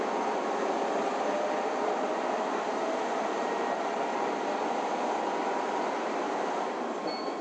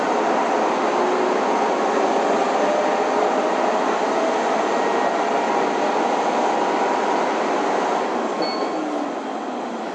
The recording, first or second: second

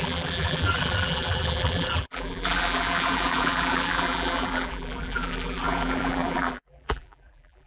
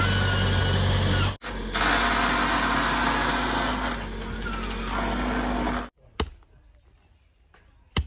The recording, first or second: second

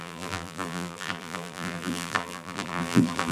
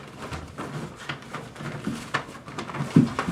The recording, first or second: second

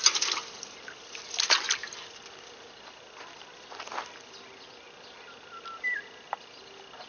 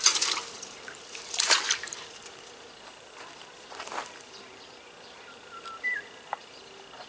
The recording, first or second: first